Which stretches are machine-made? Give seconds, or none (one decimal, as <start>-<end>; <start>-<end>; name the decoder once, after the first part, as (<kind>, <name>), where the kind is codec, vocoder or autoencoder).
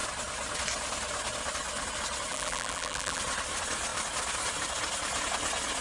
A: 2.3-3.2 (vocoder, BigVGAN v2)